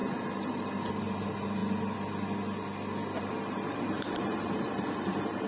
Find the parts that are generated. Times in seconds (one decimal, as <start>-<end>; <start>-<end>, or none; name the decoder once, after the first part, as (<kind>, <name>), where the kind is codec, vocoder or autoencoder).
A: 0.0-1.6 (vocoder, BigVGAN v2); 3.2-5.5